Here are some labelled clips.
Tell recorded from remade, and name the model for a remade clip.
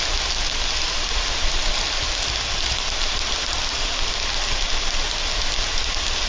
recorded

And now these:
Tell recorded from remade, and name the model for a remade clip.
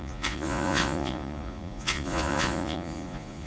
remade, vocoder, Vocos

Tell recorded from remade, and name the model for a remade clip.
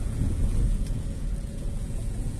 remade, vocoder, Vocos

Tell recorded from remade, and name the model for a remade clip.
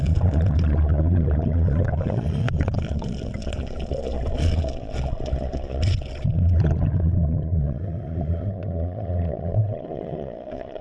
remade, vocoder, Vocos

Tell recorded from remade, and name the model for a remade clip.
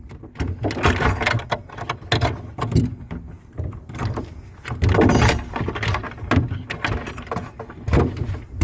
recorded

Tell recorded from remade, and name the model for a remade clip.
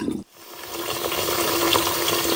recorded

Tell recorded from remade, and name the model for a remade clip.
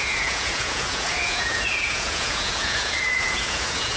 remade, vocoder, Vocos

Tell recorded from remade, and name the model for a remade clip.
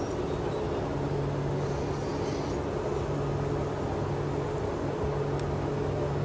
recorded